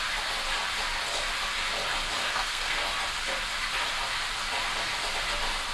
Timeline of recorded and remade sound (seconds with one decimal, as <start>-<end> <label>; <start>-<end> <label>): 0.0-2.2 recorded; 2.2-2.8 remade; 2.8-5.7 recorded